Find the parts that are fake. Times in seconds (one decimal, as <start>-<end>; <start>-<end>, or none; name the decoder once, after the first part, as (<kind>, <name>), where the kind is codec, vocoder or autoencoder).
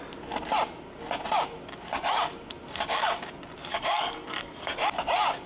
3.7-4.7 (codec, DAC)